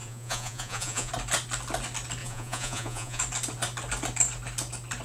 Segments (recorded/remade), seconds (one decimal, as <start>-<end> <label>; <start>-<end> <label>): 0.0-1.1 remade; 1.1-2.2 recorded; 2.2-3.2 remade; 3.2-5.0 recorded